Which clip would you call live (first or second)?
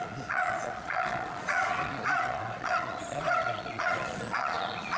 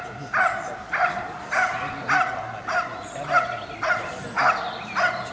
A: second